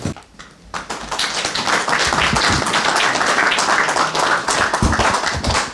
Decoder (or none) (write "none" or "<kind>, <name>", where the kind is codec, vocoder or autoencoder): none